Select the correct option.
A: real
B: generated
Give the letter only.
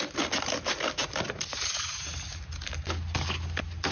A